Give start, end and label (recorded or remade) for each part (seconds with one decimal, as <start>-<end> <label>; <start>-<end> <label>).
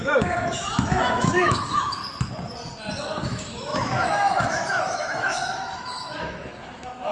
0.0-2.0 remade; 2.0-3.0 recorded; 3.0-7.1 remade